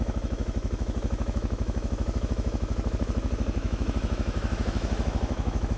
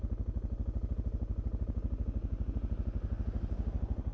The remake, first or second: first